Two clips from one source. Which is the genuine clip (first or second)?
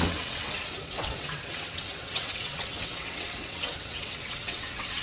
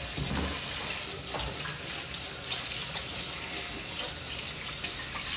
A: second